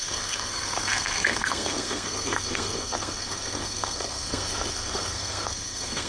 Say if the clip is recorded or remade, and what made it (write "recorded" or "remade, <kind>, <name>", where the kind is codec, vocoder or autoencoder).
remade, codec, SNAC